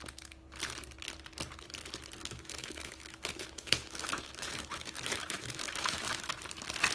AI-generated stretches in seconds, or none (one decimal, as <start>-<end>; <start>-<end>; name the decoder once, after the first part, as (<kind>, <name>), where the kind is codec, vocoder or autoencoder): 2.2-6.3 (autoencoder, DAC-VAE)

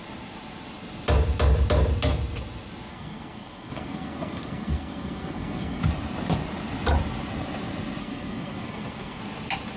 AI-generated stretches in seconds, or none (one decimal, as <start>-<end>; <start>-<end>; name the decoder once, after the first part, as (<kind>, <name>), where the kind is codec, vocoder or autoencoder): 2.9-5.8 (codec, SNAC); 8.0-9.2

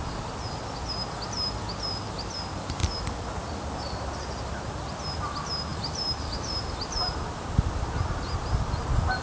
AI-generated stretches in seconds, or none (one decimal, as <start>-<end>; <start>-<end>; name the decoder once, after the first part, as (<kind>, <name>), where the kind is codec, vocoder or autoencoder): 2.8-4.5 (vocoder, BigVGAN v2)

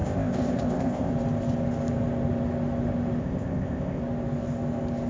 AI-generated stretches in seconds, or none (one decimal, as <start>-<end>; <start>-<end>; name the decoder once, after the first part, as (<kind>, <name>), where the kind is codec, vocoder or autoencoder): 0.0-1.1 (codec, ZipCodec); 3.2-4.0

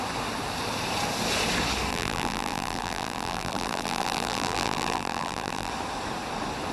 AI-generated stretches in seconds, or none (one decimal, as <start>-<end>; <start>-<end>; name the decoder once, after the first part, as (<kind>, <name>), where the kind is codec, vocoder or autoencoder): 1.9-5.7 (vocoder, BigVGAN v2)

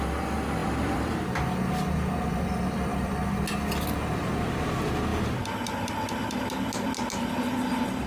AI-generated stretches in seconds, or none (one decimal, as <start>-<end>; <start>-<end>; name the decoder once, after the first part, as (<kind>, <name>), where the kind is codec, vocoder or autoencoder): 0.6-1.5 (vocoder, BigVGAN v2); 2.9-3.4; 5.1-6.4